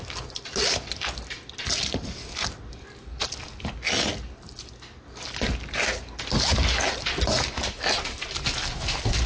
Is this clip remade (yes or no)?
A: no